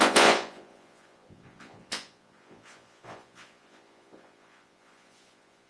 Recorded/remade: remade